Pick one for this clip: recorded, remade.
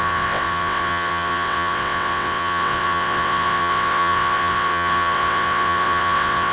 remade